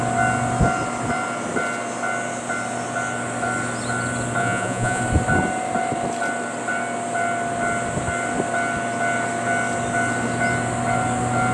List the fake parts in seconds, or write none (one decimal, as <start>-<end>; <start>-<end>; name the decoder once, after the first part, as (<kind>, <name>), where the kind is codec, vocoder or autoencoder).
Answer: 4.4-5.0 (vocoder, Vocos)